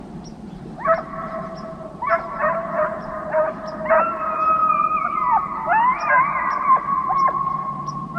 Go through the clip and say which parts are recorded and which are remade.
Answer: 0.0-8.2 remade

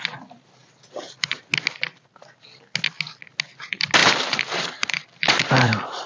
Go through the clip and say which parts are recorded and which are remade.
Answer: 0.0-0.6 recorded; 0.6-1.4 remade; 1.4-4.0 recorded; 4.0-6.1 remade

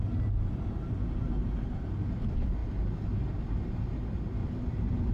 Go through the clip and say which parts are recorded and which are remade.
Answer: 0.0-4.4 recorded; 4.4-5.1 remade

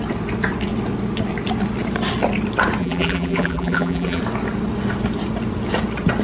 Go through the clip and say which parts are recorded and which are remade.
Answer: 0.0-2.8 recorded; 2.8-4.2 remade; 4.2-6.2 recorded

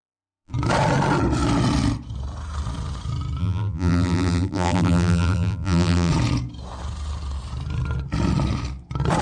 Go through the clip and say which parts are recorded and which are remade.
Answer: 0.0-0.5 remade; 0.5-3.4 recorded; 3.4-6.1 remade; 6.1-9.2 recorded

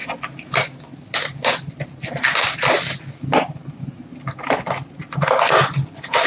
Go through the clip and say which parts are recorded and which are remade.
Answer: 0.0-6.3 recorded

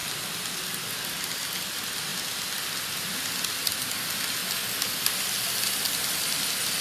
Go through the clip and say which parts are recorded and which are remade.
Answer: 0.0-6.8 recorded